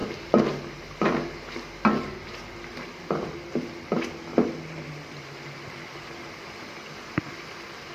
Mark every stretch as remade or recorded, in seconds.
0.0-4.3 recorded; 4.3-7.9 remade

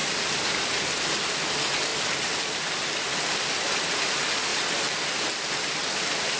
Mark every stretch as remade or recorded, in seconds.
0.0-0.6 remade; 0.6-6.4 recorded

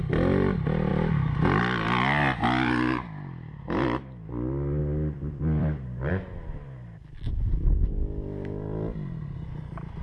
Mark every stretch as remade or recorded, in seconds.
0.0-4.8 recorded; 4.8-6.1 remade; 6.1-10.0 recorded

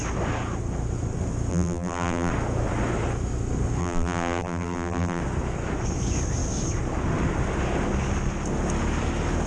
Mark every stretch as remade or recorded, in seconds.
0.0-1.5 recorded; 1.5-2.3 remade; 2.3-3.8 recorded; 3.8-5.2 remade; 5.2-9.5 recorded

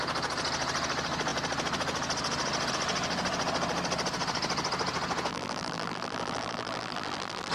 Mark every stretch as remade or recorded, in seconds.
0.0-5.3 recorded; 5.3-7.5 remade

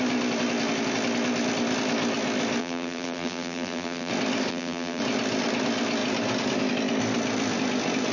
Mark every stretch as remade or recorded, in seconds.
0.0-2.6 recorded; 2.6-4.1 remade; 4.1-4.5 recorded; 4.5-5.0 remade; 5.0-8.1 recorded

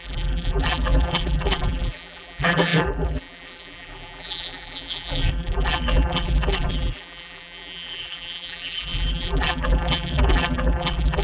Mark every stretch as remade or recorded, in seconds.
0.0-11.2 remade